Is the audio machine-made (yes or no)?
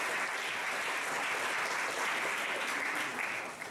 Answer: no